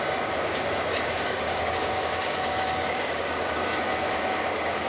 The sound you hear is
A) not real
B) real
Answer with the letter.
A